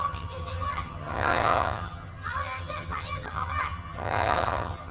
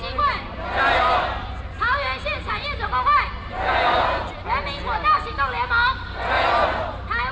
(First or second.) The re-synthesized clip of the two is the first